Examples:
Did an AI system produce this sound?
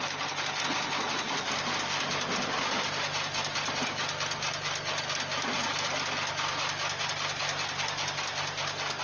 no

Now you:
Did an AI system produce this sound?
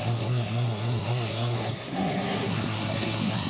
yes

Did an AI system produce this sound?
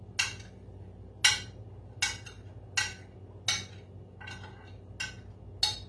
no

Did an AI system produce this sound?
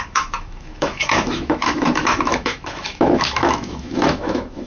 yes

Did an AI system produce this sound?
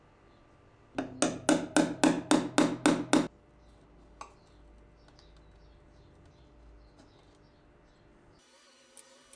no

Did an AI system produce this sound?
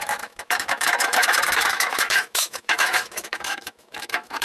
yes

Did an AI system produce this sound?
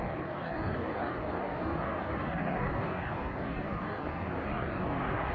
yes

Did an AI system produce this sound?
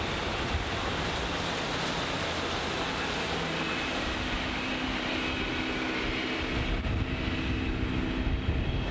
no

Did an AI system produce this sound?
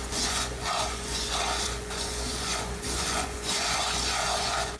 yes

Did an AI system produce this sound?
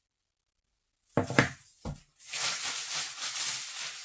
no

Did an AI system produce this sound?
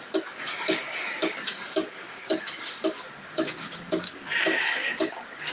yes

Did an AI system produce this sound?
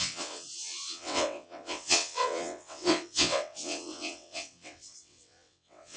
yes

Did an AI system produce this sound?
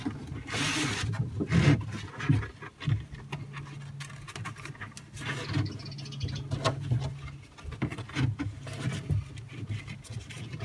no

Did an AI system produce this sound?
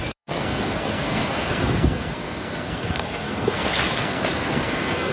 yes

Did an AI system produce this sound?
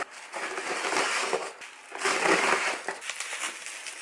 no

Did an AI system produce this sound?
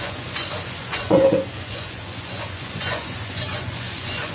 yes